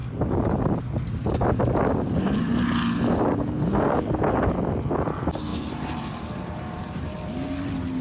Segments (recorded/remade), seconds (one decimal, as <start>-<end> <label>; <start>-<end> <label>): 0.0-5.5 recorded; 5.5-7.3 remade; 7.3-8.0 recorded